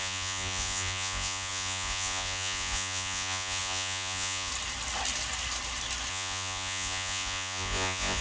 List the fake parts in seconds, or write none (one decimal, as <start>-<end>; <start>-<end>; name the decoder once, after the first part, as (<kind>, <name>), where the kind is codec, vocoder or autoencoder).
0.0-4.5 (vocoder, Vocos); 6.1-8.2